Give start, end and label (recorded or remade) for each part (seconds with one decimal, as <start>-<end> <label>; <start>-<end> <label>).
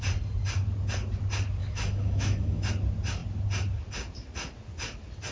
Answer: 0.0-1.6 recorded; 1.6-2.7 remade; 2.7-5.3 recorded